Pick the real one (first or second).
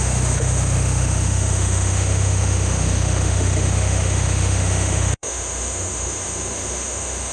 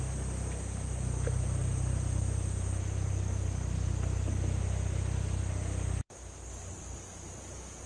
second